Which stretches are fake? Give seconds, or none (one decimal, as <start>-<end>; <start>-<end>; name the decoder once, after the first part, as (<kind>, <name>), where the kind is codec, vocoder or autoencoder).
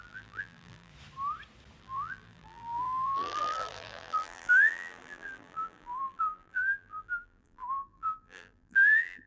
0.0-0.9 (vocoder, BigVGAN v2); 1.8-9.3